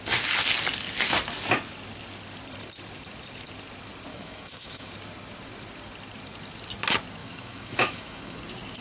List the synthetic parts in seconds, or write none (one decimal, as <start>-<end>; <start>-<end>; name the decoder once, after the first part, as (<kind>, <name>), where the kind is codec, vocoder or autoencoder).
4.1-4.9 (autoencoder, DAC-VAE); 7.2-8.4